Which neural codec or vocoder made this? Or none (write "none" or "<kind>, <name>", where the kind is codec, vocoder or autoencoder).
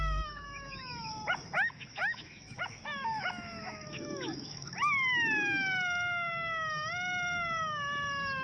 autoencoder, DAC-VAE